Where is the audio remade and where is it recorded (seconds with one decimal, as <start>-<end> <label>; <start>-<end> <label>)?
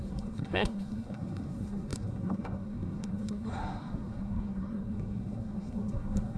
0.0-6.4 remade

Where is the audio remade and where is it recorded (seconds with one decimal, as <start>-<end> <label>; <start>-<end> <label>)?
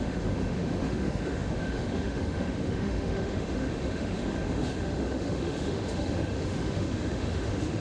0.0-7.8 remade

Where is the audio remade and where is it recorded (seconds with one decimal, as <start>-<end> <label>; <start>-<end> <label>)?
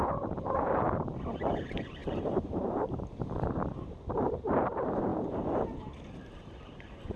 0.0-7.2 remade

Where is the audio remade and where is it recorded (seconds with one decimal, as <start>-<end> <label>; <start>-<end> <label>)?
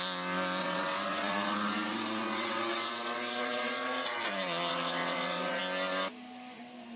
0.0-0.6 recorded; 0.6-4.2 remade; 4.2-4.7 recorded; 4.7-5.6 remade; 5.6-7.0 recorded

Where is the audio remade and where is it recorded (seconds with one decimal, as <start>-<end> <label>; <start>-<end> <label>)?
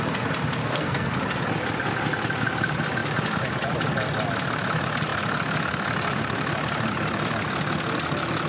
0.0-0.6 recorded; 0.6-1.2 remade; 1.2-8.5 recorded